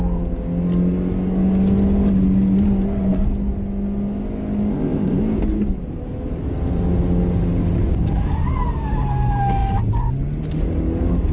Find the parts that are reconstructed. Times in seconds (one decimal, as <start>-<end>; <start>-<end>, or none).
4.7-5.2